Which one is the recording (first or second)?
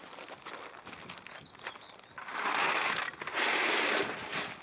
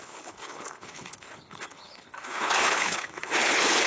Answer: first